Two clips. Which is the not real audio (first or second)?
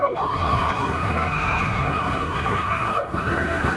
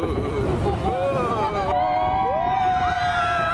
first